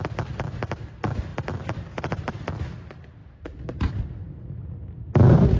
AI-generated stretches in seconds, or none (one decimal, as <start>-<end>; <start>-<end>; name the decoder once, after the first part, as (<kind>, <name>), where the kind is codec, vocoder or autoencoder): 3.2-4.4 (vocoder, BigVGAN v2)